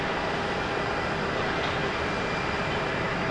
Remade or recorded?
recorded